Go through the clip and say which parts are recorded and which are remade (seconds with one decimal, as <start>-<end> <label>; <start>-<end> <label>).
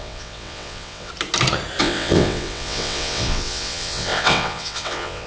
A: 0.0-1.1 remade; 1.1-1.8 recorded; 1.8-5.3 remade